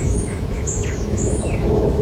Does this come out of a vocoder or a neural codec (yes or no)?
yes